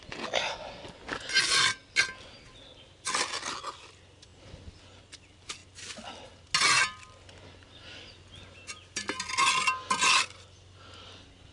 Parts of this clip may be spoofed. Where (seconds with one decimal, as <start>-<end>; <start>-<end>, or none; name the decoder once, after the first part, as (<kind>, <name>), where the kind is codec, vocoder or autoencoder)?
none